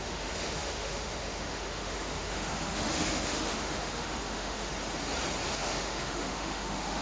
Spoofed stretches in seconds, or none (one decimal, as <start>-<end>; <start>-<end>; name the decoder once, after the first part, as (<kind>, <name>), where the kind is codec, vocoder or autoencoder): 0.0-4.7 (autoencoder, DAC-VAE); 5.5-7.0

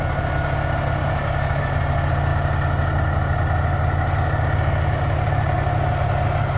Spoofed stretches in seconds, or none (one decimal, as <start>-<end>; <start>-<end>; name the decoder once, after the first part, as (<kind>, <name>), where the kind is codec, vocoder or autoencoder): 1.0-1.7 (codec, DAC)

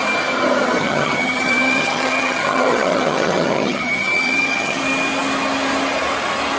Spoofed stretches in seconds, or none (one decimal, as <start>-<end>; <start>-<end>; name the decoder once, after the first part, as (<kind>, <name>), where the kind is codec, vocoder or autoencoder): 0.8-4.8 (vocoder, HiFi-GAN)

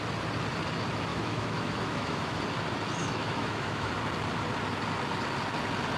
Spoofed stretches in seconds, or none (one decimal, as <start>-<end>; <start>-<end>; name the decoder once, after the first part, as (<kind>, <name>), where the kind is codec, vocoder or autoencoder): 1.1-2.4 (autoencoder, DAC-VAE); 3.0-3.9

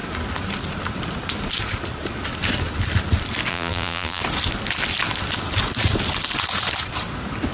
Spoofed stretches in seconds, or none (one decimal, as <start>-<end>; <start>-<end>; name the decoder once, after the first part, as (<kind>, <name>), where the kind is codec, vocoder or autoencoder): 3.5-4.2 (vocoder, BigVGAN v2)

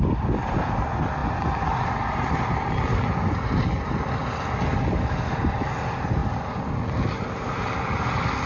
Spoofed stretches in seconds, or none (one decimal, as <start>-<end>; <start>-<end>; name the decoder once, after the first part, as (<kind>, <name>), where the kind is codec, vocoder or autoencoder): 6.2-8.0 (vocoder, BigVGAN v2)